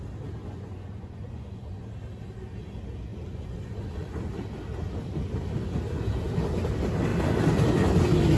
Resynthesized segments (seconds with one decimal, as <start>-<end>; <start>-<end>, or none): 0.4-1.8; 3.1-4.3